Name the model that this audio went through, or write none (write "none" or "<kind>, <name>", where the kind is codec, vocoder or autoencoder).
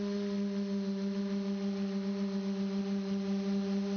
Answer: none